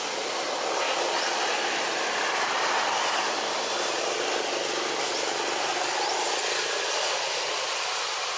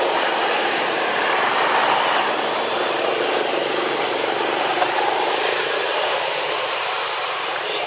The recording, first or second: first